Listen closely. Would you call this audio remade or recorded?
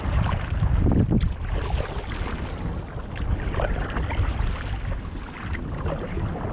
recorded